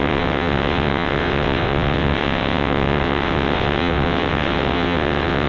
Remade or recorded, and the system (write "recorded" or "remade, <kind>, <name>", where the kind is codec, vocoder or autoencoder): remade, vocoder, WaveNeXt